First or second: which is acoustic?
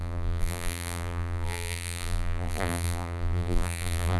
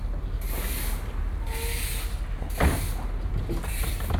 second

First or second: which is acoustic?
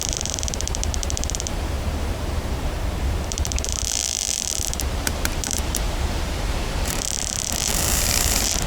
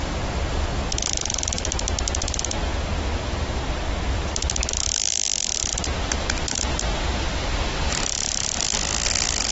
second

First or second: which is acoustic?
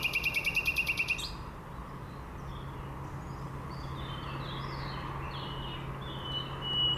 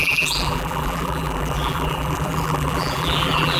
first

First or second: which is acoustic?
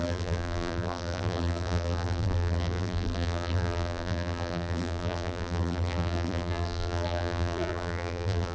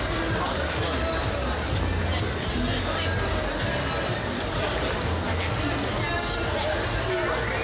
second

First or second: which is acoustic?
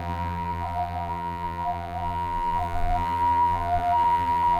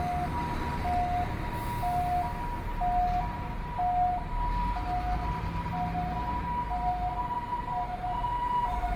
second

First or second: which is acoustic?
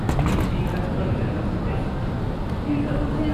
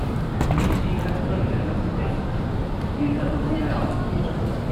first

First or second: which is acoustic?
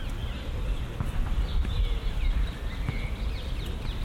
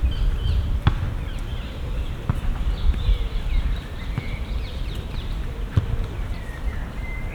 first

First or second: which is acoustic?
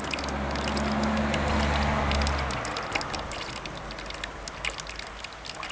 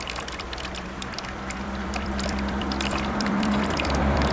first